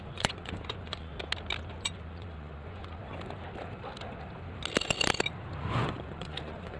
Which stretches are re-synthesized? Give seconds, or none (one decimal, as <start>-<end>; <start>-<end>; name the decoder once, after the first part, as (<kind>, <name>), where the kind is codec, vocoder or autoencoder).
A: 0.0-1.1 (vocoder, Vocos); 1.8-3.0; 5.6-6.8